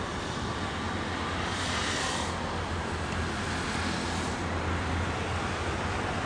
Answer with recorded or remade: recorded